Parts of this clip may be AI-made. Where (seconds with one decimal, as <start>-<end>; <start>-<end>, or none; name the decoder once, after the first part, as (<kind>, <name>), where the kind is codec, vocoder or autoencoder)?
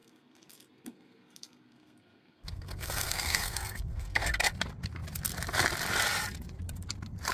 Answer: 0.0-4.4 (codec, SNAC)